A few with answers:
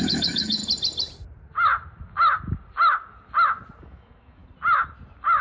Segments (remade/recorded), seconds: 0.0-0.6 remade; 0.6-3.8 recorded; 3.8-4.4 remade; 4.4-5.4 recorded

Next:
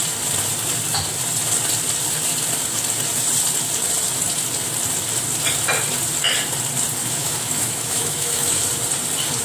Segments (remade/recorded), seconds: 0.0-7.0 recorded; 7.0-8.6 remade; 8.6-9.4 recorded

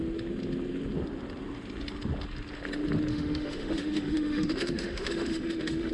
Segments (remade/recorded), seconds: 0.0-3.1 recorded; 3.1-5.9 remade

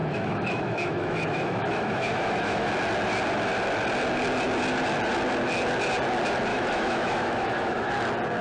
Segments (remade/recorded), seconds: 0.0-2.7 remade; 2.7-6.5 recorded; 6.5-7.9 remade; 7.9-8.4 recorded

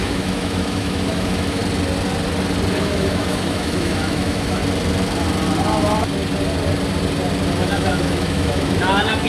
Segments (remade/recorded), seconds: 0.0-1.6 remade; 1.6-2.8 recorded; 2.8-4.6 remade; 4.6-7.6 recorded; 7.6-9.3 remade

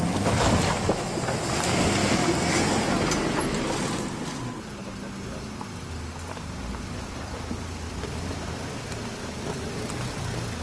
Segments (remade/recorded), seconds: 0.0-10.6 recorded

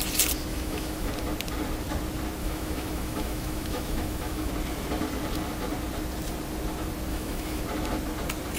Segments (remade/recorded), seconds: 0.0-0.5 recorded; 0.5-1.1 remade; 1.1-2.4 recorded; 2.4-4.5 remade; 4.5-7.1 recorded; 7.1-7.6 remade; 7.6-8.6 recorded